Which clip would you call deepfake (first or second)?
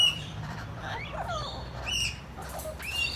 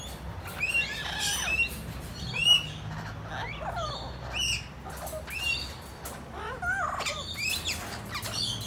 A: first